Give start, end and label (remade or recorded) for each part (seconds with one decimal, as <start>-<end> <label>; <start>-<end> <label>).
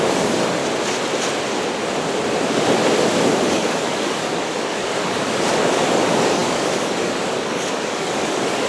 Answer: 0.0-0.6 remade; 0.6-3.5 recorded; 3.5-8.7 remade